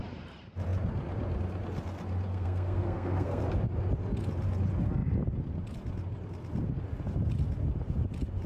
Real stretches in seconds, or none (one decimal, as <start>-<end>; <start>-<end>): 0.0-2.3; 3.4-8.5

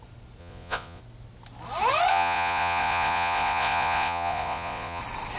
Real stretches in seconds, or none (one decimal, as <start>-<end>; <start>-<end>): 0.0-0.4; 1.0-2.1; 5.0-5.4

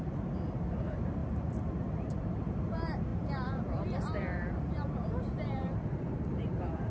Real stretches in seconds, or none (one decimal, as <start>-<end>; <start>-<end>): none

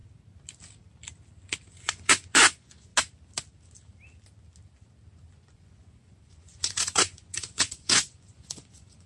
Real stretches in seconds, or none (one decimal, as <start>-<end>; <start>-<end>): 0.0-1.7; 2.9-5.3